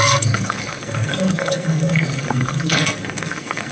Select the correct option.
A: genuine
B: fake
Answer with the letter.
B